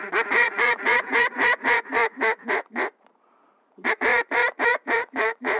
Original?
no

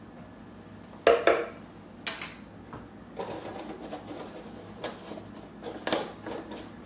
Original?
yes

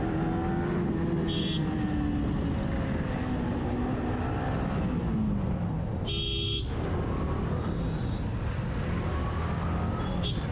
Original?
yes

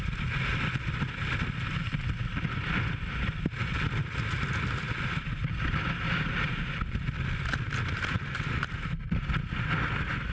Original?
yes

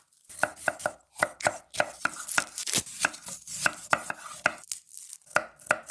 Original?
yes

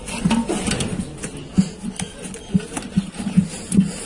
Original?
yes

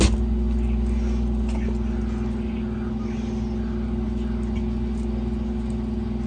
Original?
yes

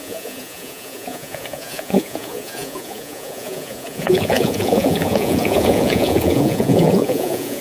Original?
no